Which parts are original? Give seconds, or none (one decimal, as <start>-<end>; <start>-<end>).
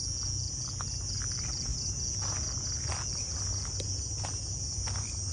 0.0-5.3